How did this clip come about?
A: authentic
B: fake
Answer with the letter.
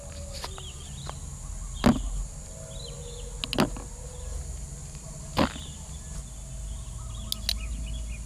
A